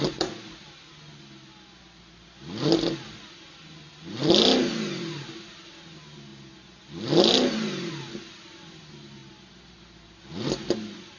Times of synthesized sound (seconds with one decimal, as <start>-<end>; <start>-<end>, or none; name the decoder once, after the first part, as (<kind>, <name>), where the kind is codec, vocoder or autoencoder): none